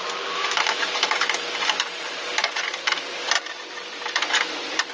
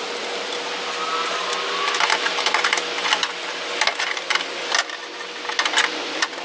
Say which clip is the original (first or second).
second